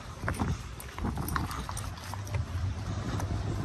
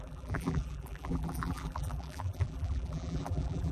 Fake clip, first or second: second